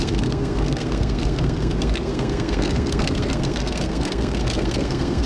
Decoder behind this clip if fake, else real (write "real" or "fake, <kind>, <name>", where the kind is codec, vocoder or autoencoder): fake, codec, SNAC